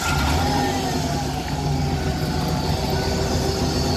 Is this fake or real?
real